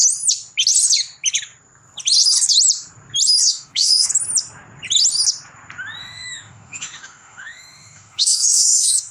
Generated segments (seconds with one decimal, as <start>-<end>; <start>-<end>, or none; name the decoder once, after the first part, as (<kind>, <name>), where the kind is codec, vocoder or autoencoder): 3.5-4.1 (autoencoder, DAC-VAE); 6.0-9.1